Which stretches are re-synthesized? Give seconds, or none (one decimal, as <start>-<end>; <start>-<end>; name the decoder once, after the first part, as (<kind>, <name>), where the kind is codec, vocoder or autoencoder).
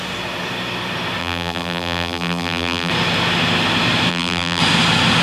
1.2-2.9 (vocoder, BigVGAN v2); 4.1-4.6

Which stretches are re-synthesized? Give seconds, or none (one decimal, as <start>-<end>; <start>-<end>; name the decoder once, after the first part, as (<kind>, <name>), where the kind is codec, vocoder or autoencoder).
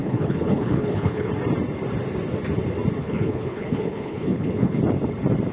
0.0-1.3 (codec, HILCodec); 3.0-4.8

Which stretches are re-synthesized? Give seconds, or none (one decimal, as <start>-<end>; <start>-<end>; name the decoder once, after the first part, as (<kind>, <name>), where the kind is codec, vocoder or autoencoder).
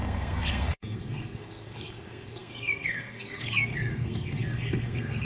0.0-5.2 (codec, SNAC)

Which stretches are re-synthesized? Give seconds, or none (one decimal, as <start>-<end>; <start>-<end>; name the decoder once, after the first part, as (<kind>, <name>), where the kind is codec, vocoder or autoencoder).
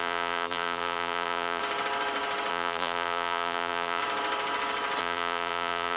0.0-1.6 (vocoder, BigVGAN v2); 2.5-4.0; 5.0-6.0